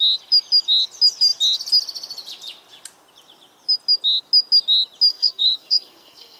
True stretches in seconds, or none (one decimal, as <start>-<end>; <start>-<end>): 0.0-5.1